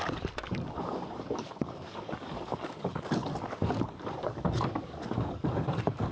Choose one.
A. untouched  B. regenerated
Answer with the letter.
B